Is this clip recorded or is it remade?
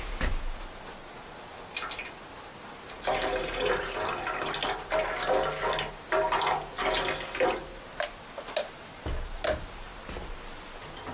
recorded